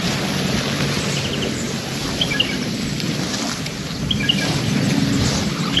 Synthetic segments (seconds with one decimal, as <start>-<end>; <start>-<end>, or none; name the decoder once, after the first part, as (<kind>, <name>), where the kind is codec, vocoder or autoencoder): 2.0-3.7 (vocoder, BigVGAN v2)